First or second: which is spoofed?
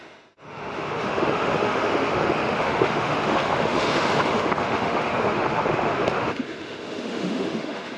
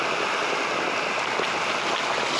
first